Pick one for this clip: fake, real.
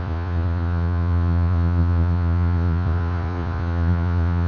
fake